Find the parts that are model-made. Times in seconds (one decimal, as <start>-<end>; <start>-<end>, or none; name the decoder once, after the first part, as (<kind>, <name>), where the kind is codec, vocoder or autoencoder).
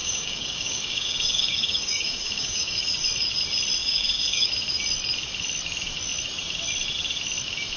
0.0-2.8 (codec, DAC); 3.8-4.5